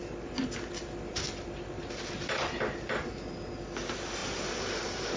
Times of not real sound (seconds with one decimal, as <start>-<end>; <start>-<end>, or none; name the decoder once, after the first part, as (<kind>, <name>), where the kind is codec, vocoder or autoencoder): none